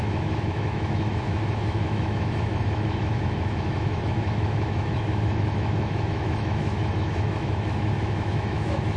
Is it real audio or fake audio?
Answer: fake